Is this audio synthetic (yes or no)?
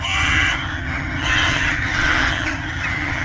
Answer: yes